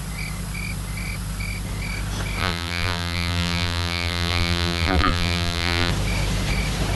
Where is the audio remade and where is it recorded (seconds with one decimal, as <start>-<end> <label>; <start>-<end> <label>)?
0.0-2.4 recorded; 2.4-5.9 remade; 5.9-7.0 recorded